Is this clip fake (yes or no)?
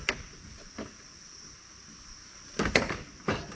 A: no